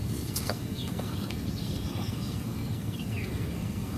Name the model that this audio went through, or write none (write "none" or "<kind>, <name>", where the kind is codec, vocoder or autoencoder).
codec, SNAC